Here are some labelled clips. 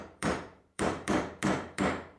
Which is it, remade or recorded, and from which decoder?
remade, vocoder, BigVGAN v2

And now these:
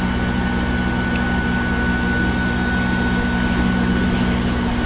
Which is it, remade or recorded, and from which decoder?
recorded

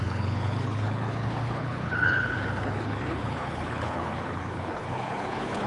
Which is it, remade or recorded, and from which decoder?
remade, codec, HILCodec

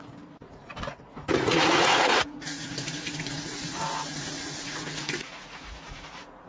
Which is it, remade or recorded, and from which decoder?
remade, vocoder, Vocos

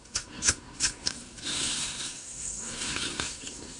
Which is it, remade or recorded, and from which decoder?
remade, codec, SNAC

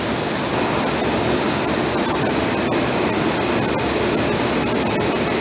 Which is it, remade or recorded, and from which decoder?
recorded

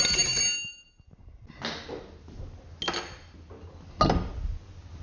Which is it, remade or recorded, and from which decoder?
recorded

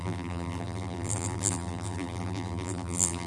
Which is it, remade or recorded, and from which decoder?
remade, vocoder, BigVGAN v2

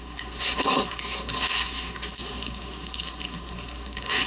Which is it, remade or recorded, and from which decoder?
remade, codec, SNAC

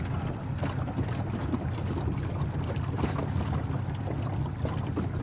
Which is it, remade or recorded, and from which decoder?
recorded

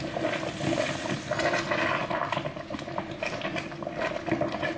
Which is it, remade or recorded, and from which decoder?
recorded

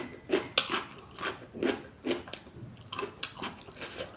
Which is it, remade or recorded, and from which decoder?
recorded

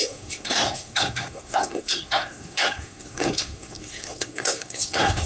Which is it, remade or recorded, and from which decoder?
remade, codec, SNAC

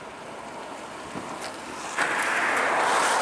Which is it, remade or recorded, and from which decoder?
recorded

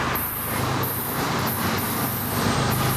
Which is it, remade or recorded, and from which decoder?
recorded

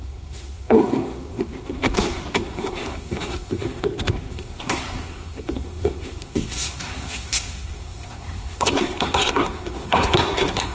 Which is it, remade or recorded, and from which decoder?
remade, codec, SNAC